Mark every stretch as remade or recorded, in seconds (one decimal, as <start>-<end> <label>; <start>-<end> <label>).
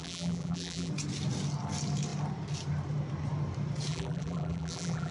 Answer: 0.0-0.9 remade; 0.9-3.9 recorded; 3.9-5.1 remade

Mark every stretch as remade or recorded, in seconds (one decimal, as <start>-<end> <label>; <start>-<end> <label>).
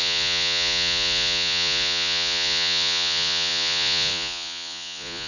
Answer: 0.0-5.3 remade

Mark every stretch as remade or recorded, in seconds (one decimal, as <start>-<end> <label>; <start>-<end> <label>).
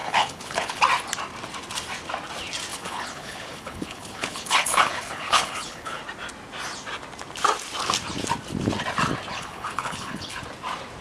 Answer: 0.0-0.8 remade; 0.8-2.7 recorded; 2.7-6.0 remade; 6.0-9.3 recorded; 9.3-10.4 remade; 10.4-11.0 recorded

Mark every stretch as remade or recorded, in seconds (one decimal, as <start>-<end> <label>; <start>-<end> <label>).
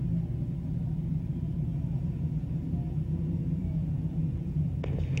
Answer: 0.0-1.7 recorded; 1.7-4.8 remade; 4.8-5.2 recorded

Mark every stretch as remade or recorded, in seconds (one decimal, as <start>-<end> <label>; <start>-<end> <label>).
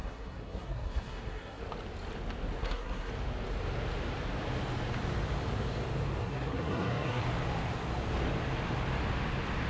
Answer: 0.0-1.6 remade; 1.6-2.6 recorded; 2.6-3.1 remade; 3.1-6.2 recorded; 6.2-7.2 remade; 7.2-9.7 recorded